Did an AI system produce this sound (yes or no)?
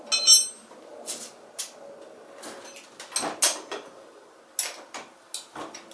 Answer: no